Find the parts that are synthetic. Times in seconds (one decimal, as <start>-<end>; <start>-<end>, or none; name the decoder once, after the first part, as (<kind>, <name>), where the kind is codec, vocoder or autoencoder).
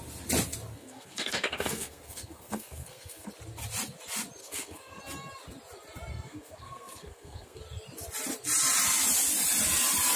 0.7-3.3 (codec, SNAC); 4.4-5.0; 6.1-7.6